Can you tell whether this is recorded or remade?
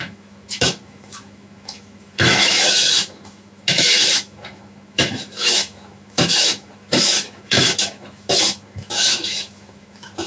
remade